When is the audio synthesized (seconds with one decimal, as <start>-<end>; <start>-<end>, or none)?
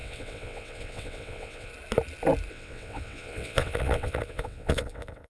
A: 0.0-1.7; 2.5-5.3